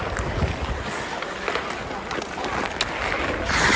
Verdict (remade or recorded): recorded